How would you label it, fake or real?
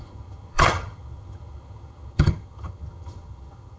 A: fake